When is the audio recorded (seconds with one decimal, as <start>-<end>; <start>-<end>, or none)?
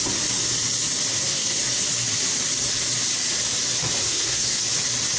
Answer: 0.0-1.1; 1.6-4.0; 4.6-5.2